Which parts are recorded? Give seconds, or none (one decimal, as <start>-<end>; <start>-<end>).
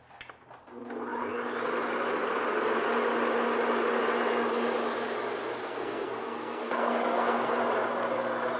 0.0-5.6; 7.6-8.6